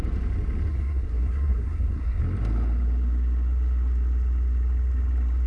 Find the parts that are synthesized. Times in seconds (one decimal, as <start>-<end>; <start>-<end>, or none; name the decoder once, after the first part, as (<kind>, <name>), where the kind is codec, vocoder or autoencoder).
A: 0.7-2.2 (codec, SNAC)